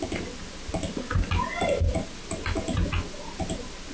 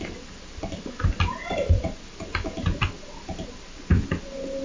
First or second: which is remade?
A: second